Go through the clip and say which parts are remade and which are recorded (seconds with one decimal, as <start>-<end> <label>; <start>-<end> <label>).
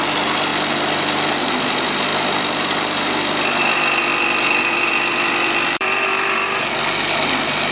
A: 0.0-2.1 recorded; 2.1-6.6 remade; 6.6-7.7 recorded